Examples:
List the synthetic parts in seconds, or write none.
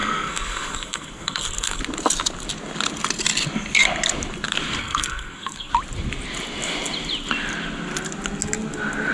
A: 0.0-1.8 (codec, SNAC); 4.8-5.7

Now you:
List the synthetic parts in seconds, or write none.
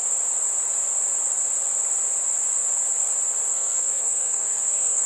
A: 3.5-5.1 (codec, SNAC)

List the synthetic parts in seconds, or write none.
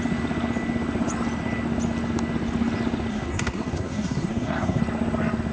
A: 3.1-4.8 (codec, SNAC)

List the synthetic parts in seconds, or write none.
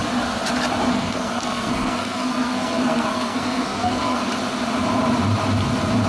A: 0.9-4.2 (codec, SNAC)